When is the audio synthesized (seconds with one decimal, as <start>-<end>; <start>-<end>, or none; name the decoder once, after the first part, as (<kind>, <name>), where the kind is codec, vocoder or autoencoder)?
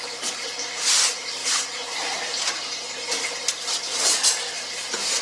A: 0.0-5.2 (vocoder, BigVGAN v2)